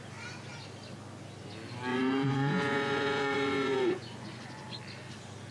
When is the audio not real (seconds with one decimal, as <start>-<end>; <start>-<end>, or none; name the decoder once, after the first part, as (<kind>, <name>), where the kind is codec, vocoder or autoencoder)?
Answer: 1.9-4.8 (vocoder, Vocos)